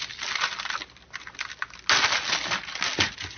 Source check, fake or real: real